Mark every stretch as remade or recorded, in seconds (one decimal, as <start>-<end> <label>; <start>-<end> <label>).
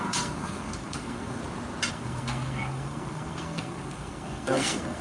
0.0-1.4 remade; 1.4-1.9 recorded; 1.9-5.0 remade